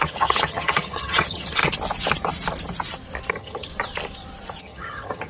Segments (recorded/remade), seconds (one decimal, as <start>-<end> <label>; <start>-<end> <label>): 0.0-1.6 remade; 1.6-3.3 recorded; 3.3-3.7 remade; 3.7-4.6 recorded; 4.6-5.3 remade